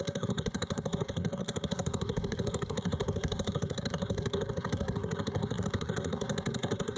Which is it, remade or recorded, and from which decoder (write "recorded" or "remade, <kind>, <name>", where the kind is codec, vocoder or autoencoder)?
remade, codec, SNAC